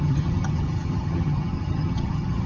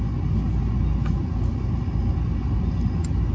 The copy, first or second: first